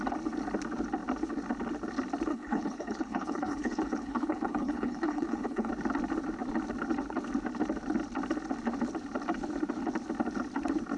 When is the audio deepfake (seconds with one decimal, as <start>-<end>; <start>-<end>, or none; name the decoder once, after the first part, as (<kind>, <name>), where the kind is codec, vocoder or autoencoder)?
2.3-5.7 (codec, HILCodec)

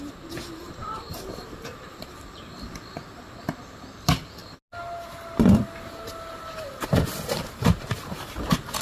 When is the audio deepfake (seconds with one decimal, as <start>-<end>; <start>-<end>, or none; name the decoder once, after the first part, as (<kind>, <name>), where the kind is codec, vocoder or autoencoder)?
0.6-2.4 (vocoder, BigVGAN v2)